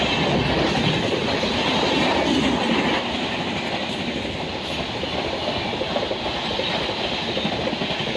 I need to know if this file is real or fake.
real